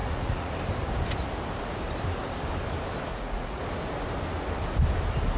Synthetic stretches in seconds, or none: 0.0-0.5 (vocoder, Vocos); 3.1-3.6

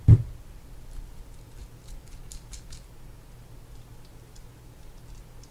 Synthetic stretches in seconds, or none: none

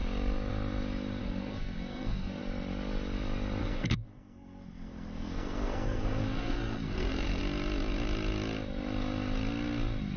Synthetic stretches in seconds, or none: 1.2-2.4 (codec, SNAC); 3.6-7.4

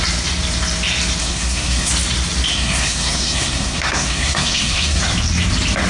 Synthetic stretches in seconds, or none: 1.2-1.9 (codec, SNAC); 2.5-5.0

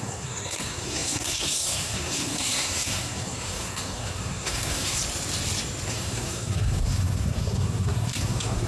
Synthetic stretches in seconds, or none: 0.0-5.0 (codec, SNAC); 5.9-8.7

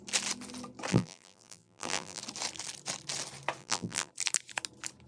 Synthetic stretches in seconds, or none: 0.9-2.2 (vocoder, BigVGAN v2); 3.6-4.1

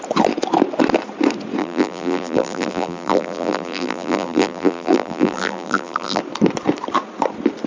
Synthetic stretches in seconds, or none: 1.6-6.2 (vocoder, BigVGAN v2)

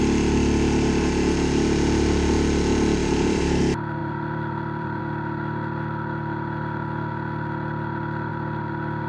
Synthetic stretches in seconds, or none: 3.0-3.6 (vocoder, BigVGAN v2); 4.0-5.0